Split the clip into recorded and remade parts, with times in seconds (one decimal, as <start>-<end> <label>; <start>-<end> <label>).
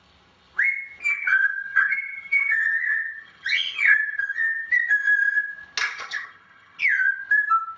0.0-1.1 recorded; 1.1-4.7 remade; 4.7-5.8 recorded; 5.8-6.8 remade; 6.8-7.8 recorded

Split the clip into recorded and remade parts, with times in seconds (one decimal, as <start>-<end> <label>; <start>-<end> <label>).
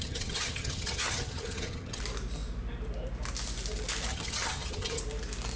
0.0-2.0 remade; 2.0-4.1 recorded; 4.1-5.0 remade; 5.0-5.6 recorded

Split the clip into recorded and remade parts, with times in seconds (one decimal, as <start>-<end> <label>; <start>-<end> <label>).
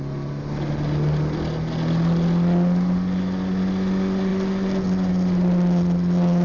0.0-6.4 recorded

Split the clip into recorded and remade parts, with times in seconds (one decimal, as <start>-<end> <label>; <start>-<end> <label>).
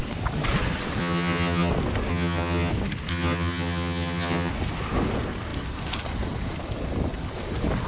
0.0-1.0 recorded; 1.0-1.7 remade; 1.7-2.1 recorded; 2.1-2.7 remade; 2.7-3.1 recorded; 3.1-4.5 remade; 4.5-7.9 recorded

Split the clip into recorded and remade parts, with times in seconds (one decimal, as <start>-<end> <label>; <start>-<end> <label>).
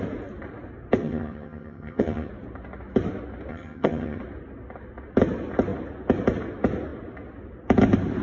0.0-1.0 recorded; 1.0-2.3 remade; 2.3-3.5 recorded; 3.5-4.2 remade; 4.2-8.2 recorded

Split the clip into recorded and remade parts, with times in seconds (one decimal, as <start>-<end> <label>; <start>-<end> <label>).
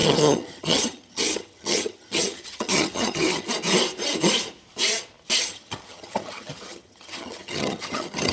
0.0-3.5 remade; 3.5-5.4 recorded; 5.4-8.3 remade